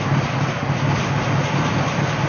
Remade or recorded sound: recorded